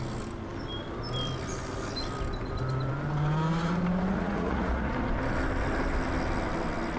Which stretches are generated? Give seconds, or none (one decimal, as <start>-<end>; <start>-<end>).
4.1-4.9